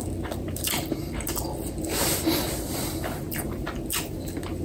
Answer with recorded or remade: recorded